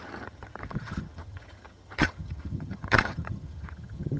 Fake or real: fake